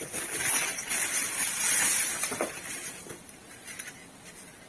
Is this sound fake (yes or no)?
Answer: yes